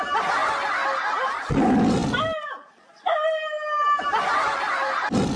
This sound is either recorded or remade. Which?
recorded